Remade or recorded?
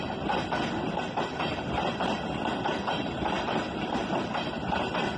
recorded